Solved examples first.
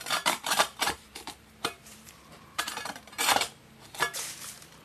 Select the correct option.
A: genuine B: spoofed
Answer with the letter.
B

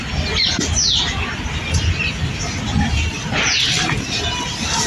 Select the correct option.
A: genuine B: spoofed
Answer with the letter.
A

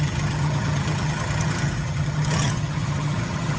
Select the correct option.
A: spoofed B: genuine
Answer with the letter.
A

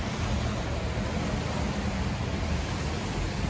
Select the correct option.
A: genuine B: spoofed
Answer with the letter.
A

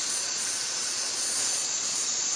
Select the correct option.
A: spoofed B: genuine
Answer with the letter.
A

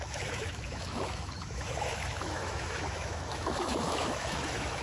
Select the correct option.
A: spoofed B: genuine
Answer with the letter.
A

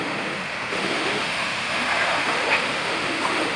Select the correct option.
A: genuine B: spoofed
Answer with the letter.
B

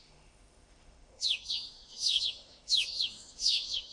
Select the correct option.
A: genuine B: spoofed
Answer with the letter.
B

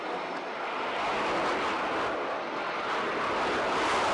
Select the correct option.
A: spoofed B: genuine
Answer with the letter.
B